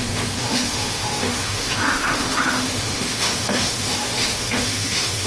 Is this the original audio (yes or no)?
no